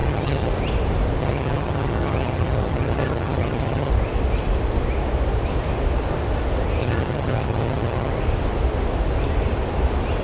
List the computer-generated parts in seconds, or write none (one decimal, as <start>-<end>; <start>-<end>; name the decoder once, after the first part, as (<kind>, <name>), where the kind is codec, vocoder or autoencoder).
0.0-0.5 (vocoder, HiFi-GAN); 1.2-3.9; 6.8-8.1